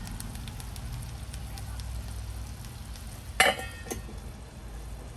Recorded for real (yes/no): yes